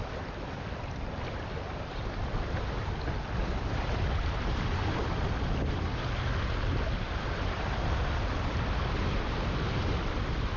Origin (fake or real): real